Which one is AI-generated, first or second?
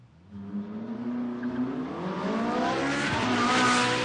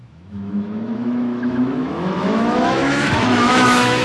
second